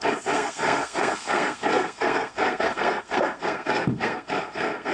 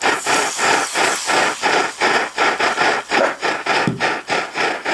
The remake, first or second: first